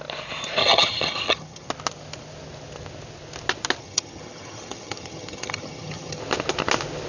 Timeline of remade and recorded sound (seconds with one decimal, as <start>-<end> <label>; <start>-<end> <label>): 0.0-0.6 recorded; 0.6-1.7 remade; 1.7-3.8 recorded; 3.8-6.2 remade; 6.2-7.1 recorded